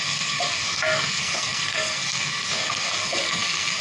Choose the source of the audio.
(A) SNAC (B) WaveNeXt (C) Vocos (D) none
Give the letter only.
A